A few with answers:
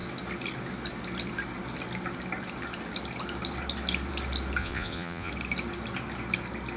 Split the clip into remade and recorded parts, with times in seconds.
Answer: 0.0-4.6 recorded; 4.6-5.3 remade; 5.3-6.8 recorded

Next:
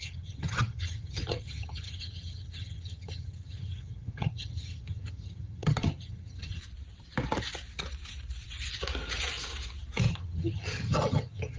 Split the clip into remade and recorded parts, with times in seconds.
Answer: 0.0-6.6 remade; 6.6-10.1 recorded; 10.1-11.6 remade

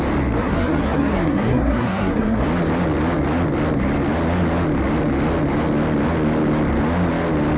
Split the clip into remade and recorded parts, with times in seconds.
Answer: 0.0-0.4 recorded; 0.4-2.4 remade; 2.4-7.6 recorded

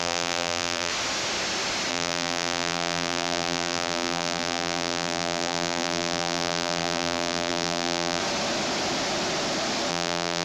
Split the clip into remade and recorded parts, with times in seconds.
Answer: 0.0-0.9 remade; 0.9-1.9 recorded; 1.9-8.2 remade; 8.2-9.9 recorded; 9.9-10.4 remade

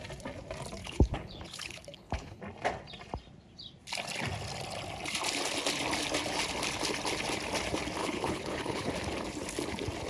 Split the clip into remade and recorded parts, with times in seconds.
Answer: 0.0-0.8 recorded; 0.8-2.4 remade; 2.4-8.0 recorded; 8.0-8.9 remade; 8.9-10.1 recorded

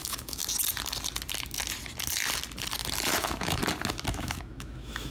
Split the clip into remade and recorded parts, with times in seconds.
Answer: 0.0-0.4 remade; 0.4-3.2 recorded; 3.2-3.6 remade; 3.6-4.1 recorded; 4.1-5.1 remade